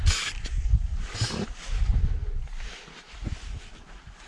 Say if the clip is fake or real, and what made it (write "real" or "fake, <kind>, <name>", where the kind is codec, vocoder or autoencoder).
real